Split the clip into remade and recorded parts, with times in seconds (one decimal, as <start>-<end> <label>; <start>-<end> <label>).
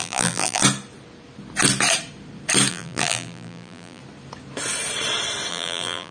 0.0-0.6 remade; 0.6-2.7 recorded; 2.7-4.0 remade; 4.0-5.5 recorded; 5.5-6.1 remade